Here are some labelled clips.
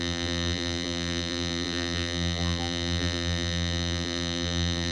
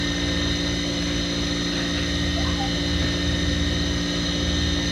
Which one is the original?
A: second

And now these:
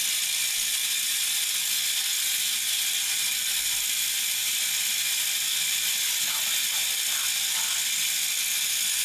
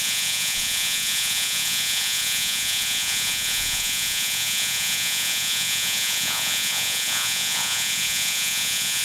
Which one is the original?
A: first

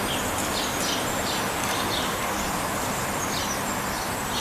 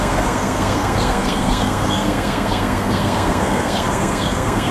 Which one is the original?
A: first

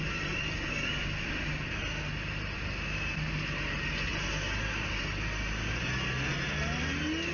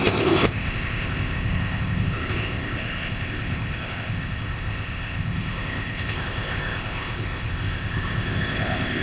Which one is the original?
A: first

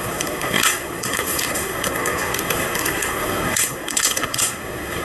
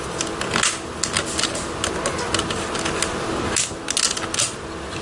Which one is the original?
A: second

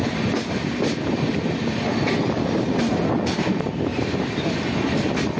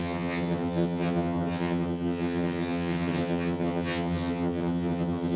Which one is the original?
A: first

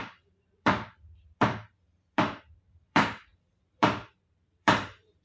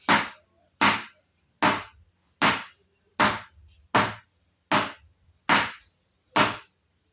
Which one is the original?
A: second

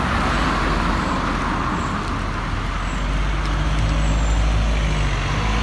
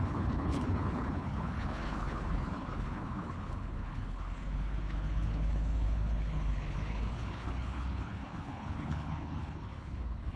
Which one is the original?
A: first